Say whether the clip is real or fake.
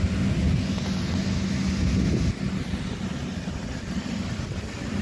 real